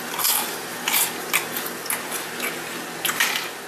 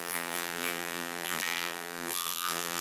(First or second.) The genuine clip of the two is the first